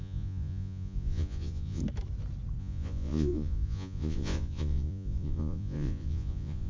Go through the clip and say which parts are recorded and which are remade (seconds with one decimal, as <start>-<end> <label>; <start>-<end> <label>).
0.0-1.8 remade; 1.8-2.6 recorded; 2.6-6.7 remade